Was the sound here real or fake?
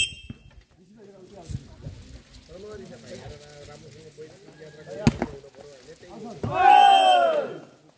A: real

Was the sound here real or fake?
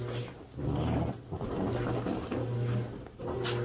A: real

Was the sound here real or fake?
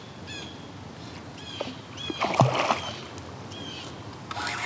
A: real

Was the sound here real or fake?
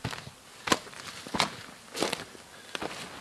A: real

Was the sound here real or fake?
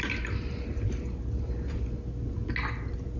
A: real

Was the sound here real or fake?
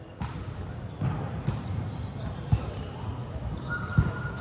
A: real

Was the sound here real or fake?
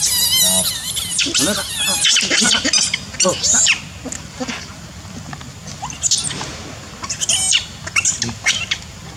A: real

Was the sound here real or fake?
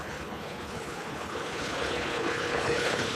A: fake